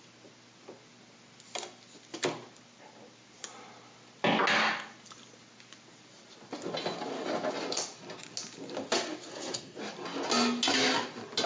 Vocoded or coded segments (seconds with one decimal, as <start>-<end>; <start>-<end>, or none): 9.3-9.8